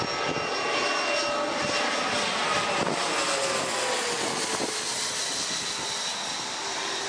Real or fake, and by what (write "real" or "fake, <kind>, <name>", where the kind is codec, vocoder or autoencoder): real